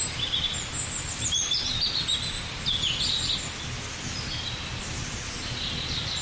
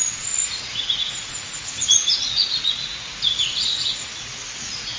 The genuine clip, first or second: first